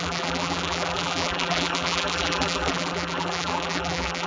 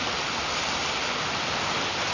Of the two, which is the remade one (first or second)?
first